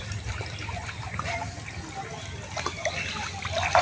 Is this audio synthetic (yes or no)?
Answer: yes